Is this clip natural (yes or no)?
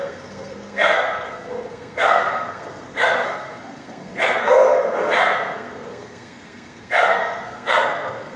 no